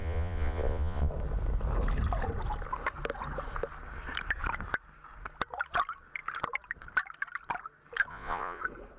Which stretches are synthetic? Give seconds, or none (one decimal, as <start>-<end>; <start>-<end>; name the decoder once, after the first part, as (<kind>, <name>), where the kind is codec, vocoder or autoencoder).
0.0-1.1 (vocoder, Vocos); 8.1-8.6